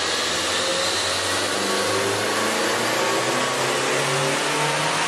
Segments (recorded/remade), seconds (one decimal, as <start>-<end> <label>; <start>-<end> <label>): 0.0-5.1 recorded